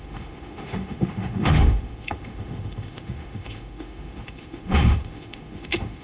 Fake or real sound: fake